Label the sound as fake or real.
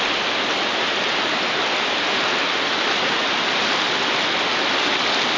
real